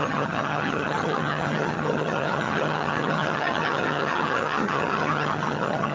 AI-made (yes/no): yes